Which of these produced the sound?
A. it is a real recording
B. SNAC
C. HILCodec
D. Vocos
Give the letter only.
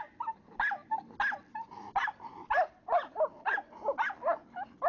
A